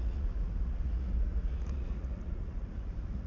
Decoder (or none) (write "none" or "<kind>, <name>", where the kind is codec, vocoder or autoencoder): vocoder, Vocos